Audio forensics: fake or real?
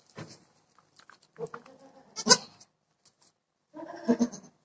real